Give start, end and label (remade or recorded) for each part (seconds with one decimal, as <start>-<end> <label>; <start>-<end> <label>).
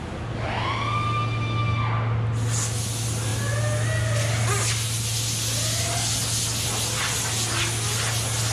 0.0-8.5 recorded